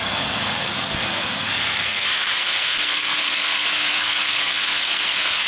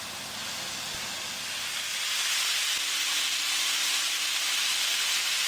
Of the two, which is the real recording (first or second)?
second